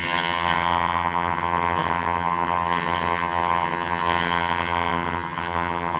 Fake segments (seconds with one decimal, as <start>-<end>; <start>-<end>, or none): 0.0-6.0